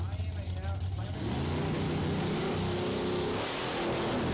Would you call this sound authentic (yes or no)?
yes